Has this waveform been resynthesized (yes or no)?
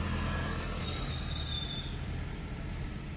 no